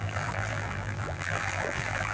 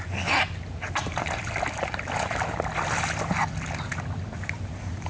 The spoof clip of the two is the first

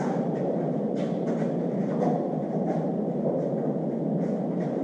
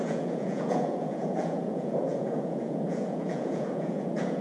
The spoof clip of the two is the second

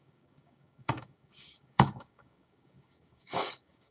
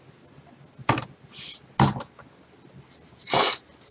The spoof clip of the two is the first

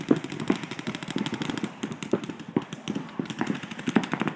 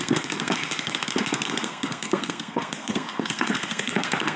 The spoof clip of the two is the second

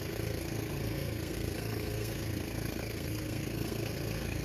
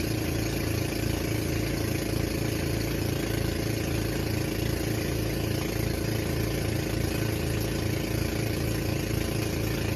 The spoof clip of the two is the first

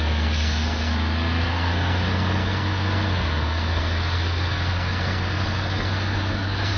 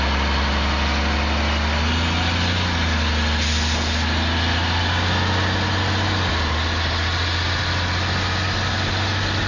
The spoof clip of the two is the first